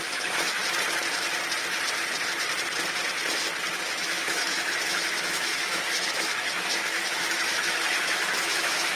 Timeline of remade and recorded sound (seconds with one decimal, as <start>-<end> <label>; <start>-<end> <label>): 0.0-0.6 remade; 0.6-3.7 recorded; 3.7-9.0 remade